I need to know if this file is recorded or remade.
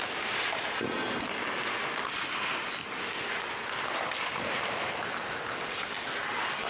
recorded